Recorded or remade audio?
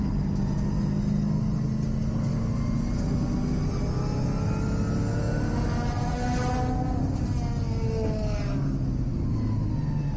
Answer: recorded